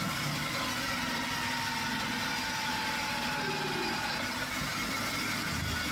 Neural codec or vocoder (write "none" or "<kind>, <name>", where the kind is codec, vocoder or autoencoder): none